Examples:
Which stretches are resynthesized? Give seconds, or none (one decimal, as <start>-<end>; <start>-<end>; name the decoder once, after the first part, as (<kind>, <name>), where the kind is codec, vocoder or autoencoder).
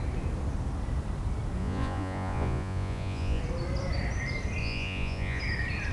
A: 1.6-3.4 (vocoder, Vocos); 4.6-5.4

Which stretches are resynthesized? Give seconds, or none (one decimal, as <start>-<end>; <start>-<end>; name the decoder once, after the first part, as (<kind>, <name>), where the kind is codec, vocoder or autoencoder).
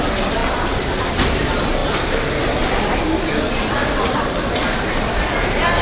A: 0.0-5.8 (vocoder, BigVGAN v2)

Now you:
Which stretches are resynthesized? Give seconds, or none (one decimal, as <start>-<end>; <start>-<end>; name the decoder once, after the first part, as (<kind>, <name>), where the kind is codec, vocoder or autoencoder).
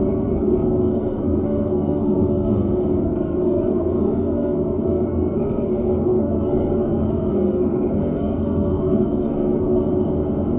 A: 0.0-9.9 (codec, SNAC)